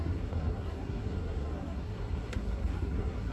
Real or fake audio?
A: fake